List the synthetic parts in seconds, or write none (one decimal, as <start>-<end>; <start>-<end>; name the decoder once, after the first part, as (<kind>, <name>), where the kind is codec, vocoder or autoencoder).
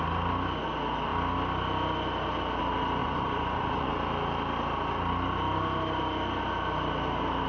3.0-3.9 (vocoder, Vocos)